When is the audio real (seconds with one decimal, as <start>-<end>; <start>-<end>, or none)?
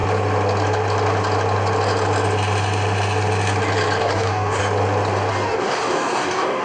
0.0-4.0; 4.6-5.3